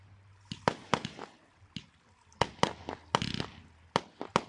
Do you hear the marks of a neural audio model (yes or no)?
no